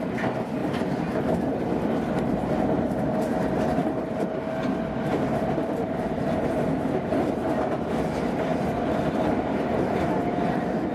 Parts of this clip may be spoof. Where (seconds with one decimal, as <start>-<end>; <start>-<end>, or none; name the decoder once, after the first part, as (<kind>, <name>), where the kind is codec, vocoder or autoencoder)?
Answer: 3.8-4.5 (vocoder, BigVGAN v2); 8.5-10.5